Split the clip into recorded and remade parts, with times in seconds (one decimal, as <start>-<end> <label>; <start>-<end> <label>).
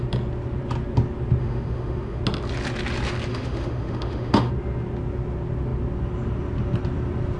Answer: 0.0-1.4 recorded; 1.4-2.2 remade; 2.2-3.3 recorded; 3.3-4.5 remade; 4.5-7.4 recorded